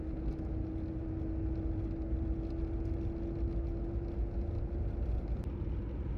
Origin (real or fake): real